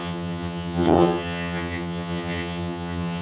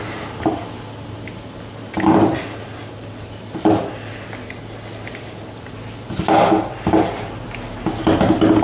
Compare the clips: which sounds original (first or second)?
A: second